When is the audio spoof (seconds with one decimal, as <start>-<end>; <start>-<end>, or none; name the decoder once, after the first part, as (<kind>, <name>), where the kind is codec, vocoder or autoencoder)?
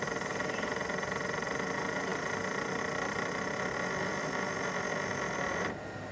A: none